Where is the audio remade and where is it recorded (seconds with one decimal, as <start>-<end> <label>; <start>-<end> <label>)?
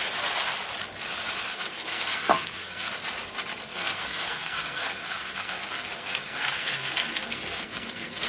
0.0-1.5 recorded; 1.5-2.9 remade; 2.9-3.7 recorded; 3.7-8.3 remade